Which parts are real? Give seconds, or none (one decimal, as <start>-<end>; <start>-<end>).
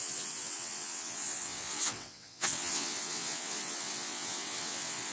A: none